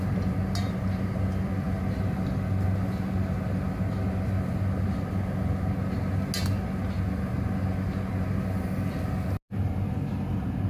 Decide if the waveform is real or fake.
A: real